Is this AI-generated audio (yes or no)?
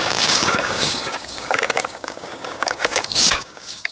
yes